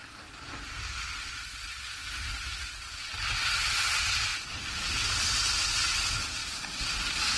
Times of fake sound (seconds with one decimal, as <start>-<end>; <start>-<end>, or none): none